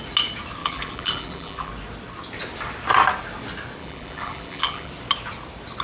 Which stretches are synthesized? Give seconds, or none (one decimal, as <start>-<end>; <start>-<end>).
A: 0.6-1.7; 3.8-4.9